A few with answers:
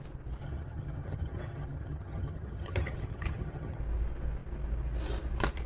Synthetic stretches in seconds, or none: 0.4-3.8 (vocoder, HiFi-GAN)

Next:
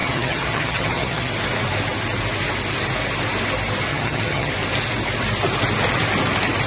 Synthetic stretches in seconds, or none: 0.0-1.3 (vocoder, HiFi-GAN); 3.9-4.5

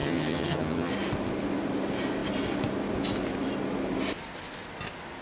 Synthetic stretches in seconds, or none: 0.0-0.9 (vocoder, HiFi-GAN)